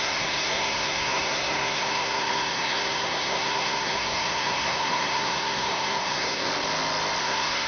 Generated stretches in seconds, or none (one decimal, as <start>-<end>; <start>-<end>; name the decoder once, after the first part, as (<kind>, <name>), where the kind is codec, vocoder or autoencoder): 0.0-6.5 (codec, SNAC); 7.2-7.7